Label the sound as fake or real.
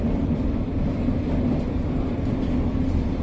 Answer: real